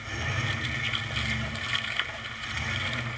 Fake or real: real